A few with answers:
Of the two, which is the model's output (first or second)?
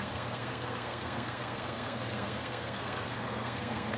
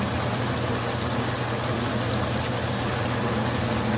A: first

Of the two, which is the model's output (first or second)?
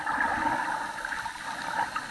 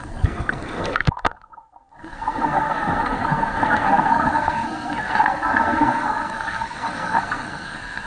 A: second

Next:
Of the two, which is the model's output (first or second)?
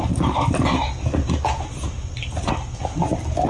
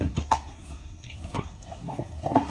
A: second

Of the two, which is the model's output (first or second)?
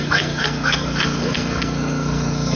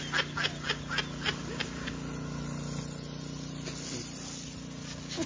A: first